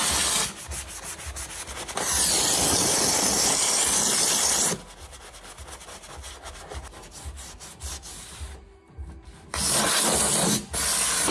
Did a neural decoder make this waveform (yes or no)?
no